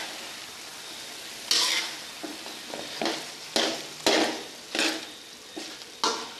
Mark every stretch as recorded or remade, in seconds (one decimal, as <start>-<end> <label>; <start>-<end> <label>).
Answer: 0.0-6.4 recorded

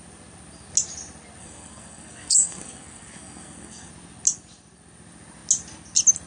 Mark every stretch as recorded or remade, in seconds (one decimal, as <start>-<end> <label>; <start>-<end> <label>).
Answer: 0.0-1.4 recorded; 1.4-3.9 remade; 3.9-6.3 recorded

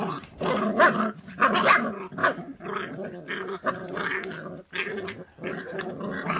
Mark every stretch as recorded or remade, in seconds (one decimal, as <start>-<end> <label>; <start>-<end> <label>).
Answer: 0.0-6.4 recorded

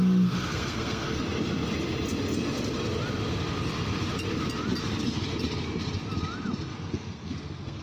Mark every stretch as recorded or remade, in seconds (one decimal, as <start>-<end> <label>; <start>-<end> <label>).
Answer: 0.0-1.2 remade; 1.2-6.7 recorded; 6.7-7.8 remade